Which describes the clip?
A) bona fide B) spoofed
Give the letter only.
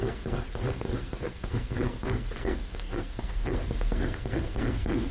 B